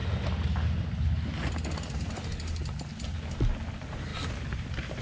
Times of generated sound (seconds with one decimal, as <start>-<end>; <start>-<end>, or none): none